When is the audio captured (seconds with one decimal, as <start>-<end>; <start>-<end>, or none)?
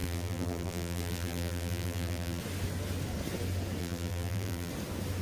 2.4-3.8; 4.7-5.2